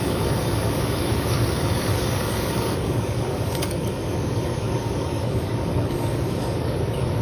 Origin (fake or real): fake